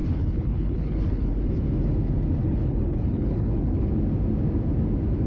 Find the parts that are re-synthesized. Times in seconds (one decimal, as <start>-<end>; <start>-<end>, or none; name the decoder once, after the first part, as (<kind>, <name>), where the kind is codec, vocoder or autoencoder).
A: 0.0-1.4 (codec, HILCodec); 2.4-3.9

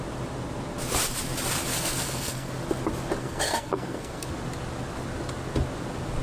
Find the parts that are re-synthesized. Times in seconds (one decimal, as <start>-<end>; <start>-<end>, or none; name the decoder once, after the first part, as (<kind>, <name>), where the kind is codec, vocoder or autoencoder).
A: 1.7-2.5 (codec, SNAC); 3.2-4.3

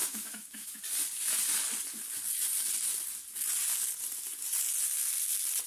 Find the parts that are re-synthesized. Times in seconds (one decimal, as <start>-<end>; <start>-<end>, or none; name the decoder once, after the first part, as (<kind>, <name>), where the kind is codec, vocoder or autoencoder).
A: 0.0-0.8 (autoencoder, DAC-VAE)

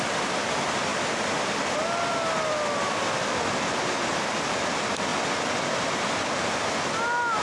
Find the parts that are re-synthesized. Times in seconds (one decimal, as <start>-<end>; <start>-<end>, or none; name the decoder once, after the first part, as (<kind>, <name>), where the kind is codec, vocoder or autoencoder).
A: none

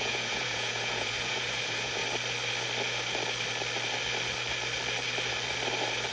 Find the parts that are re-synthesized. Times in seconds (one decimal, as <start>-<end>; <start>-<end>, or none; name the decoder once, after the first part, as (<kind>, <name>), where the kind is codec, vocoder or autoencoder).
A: 0.0-2.0 (vocoder, Vocos)

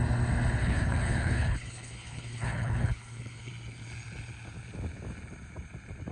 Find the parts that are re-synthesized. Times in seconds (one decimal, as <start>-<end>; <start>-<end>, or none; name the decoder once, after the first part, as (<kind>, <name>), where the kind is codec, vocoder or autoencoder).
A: 0.6-3.5 (codec, HILCodec)

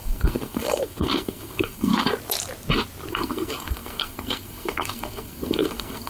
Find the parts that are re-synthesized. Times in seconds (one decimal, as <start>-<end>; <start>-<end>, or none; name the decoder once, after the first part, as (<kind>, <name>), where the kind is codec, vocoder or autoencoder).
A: 0.0-1.9 (codec, SNAC); 3.1-6.1

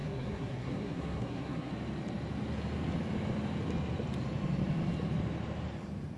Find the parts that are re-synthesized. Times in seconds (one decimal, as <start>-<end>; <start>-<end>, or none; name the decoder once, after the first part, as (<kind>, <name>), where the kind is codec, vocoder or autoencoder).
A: 0.0-1.7 (codec, SNAC)